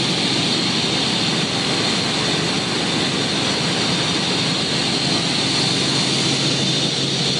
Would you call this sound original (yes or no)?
yes